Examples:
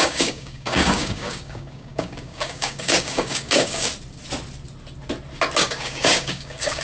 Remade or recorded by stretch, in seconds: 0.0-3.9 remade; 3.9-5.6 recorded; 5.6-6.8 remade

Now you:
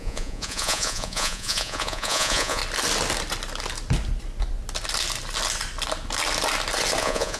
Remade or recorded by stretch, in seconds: 0.0-2.6 remade; 2.6-7.0 recorded; 7.0-7.4 remade

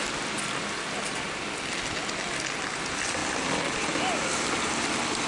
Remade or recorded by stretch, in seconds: 0.0-3.2 recorded; 3.2-3.8 remade; 3.8-5.3 recorded

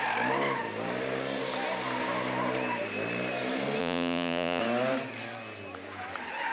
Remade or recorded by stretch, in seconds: 0.0-3.8 recorded; 3.8-4.6 remade; 4.6-6.5 recorded